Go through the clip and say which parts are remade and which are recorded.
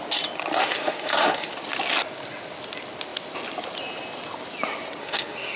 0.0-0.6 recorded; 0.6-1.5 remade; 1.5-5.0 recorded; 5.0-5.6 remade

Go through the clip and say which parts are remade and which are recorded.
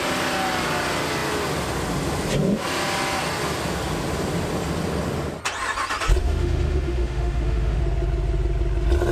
0.0-6.2 recorded; 6.2-7.8 remade; 7.8-9.1 recorded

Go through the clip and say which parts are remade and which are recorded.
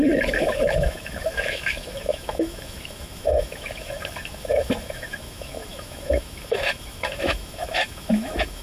0.0-8.6 remade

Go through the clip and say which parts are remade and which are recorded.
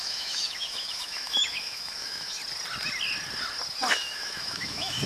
0.0-2.4 remade; 2.4-3.9 recorded; 3.9-5.1 remade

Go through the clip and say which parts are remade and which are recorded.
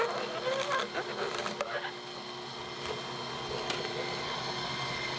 0.0-5.2 recorded